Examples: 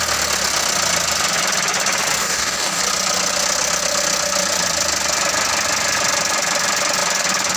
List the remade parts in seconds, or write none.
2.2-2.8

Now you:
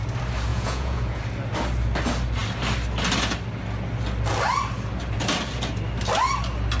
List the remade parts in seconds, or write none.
0.5-1.2

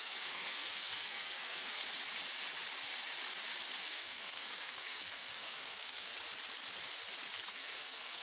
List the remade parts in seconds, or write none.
0.0-1.8; 3.8-6.1; 7.5-8.2

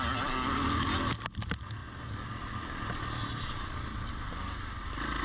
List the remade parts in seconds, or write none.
none

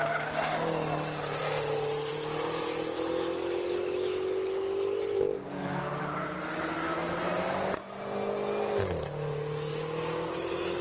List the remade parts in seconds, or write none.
5.4-6.0

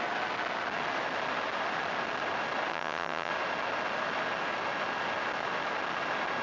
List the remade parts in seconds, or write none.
2.7-3.3

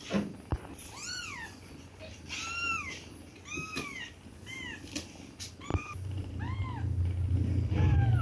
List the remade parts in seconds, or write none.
1.0-2.0; 5.7-6.3

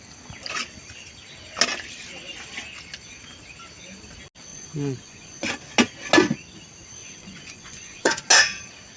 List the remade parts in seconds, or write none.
4.5-5.5; 7.0-8.2